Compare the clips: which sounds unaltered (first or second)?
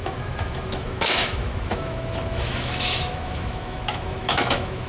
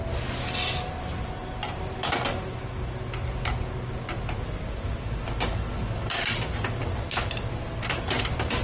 second